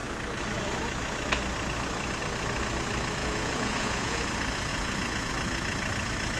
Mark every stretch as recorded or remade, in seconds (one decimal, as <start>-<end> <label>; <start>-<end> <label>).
0.0-3.2 recorded; 3.2-4.2 remade; 4.2-4.7 recorded; 4.7-5.3 remade; 5.3-6.4 recorded